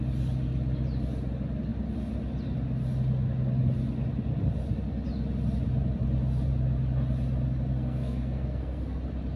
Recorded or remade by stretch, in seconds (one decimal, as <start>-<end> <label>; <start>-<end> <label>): 0.0-7.7 recorded; 7.7-9.0 remade; 9.0-9.4 recorded